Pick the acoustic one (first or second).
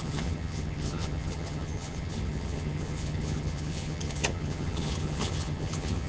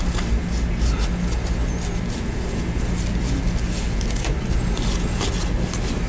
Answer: second